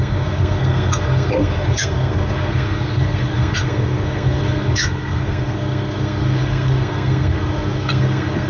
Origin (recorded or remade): remade